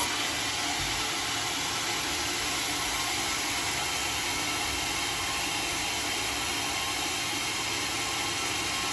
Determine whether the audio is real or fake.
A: real